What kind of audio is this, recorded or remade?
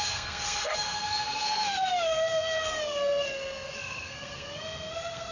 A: remade